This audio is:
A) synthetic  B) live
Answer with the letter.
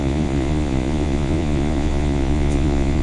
A